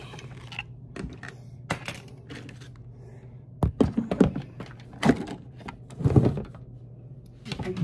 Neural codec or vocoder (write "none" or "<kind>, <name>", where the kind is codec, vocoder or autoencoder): none